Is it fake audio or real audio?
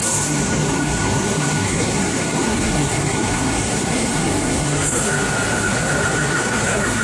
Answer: fake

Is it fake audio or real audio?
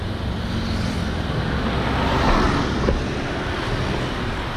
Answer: real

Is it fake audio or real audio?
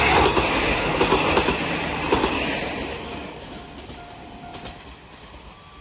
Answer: real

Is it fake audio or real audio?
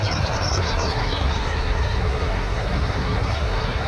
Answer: fake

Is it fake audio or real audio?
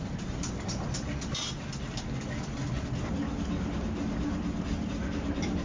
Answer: real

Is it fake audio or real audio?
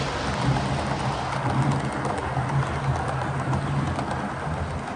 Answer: real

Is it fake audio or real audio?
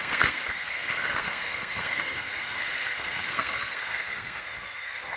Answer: fake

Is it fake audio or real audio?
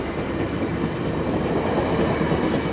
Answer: real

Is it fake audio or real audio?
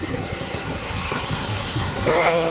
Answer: fake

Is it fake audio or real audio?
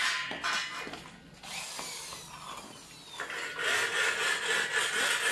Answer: real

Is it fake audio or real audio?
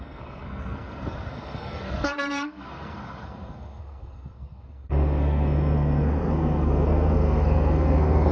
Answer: fake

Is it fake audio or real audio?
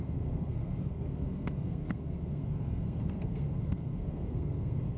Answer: fake